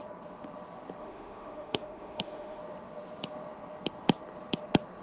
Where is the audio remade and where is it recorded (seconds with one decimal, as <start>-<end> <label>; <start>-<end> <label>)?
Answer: 0.0-1.0 recorded; 1.0-2.6 remade; 2.6-5.0 recorded